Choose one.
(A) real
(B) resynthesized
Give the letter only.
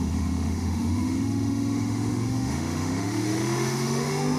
B